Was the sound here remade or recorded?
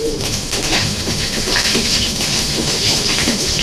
remade